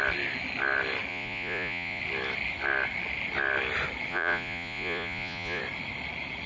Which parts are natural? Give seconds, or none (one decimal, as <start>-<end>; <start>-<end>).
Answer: 0.0-1.1; 2.0-4.1; 5.6-6.5